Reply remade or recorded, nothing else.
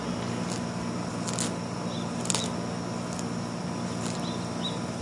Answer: recorded